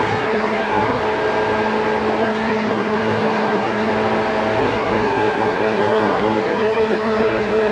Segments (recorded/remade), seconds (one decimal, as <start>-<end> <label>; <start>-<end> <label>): 0.0-1.0 remade; 1.0-2.2 recorded; 2.2-3.9 remade; 3.9-4.6 recorded; 4.6-7.7 remade